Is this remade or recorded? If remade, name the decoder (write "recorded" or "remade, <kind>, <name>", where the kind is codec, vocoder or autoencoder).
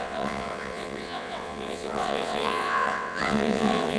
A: remade, vocoder, WaveNeXt